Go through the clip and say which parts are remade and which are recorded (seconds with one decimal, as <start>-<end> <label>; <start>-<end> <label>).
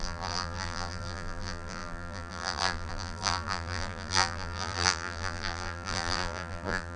0.0-7.0 remade